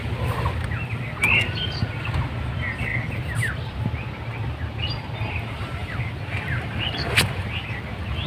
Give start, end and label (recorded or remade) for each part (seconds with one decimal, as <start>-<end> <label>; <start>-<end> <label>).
0.0-5.8 recorded; 5.8-7.5 remade; 7.5-8.3 recorded